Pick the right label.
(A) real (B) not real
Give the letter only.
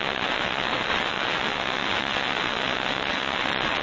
B